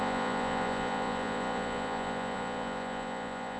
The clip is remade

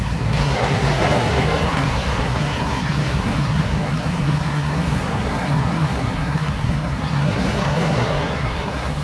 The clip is remade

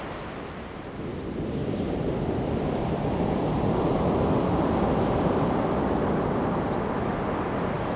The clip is recorded